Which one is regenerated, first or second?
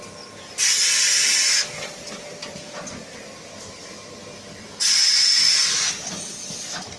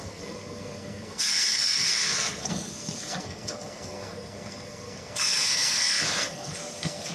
second